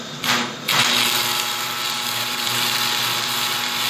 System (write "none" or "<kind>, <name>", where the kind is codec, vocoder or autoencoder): vocoder, BigVGAN v2